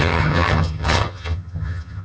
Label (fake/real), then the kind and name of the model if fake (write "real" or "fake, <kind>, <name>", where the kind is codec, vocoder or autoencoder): fake, vocoder, HiFi-GAN